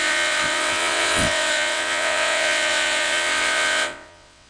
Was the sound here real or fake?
fake